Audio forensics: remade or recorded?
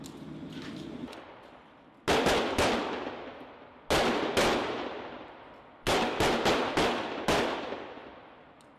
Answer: recorded